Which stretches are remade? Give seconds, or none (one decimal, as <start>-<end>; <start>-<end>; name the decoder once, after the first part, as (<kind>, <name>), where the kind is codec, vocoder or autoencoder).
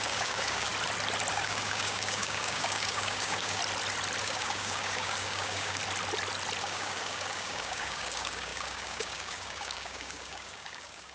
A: 0.0-0.7 (codec, DAC); 1.3-3.6; 4.2-5.8; 6.6-11.1